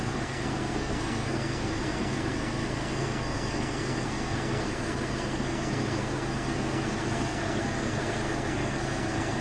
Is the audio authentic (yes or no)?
no